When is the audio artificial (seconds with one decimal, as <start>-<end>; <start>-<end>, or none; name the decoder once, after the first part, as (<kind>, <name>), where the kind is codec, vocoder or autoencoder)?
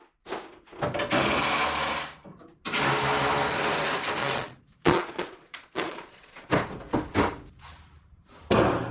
4.2-6.5 (vocoder, Vocos)